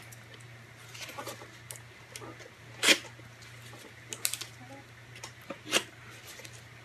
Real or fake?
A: real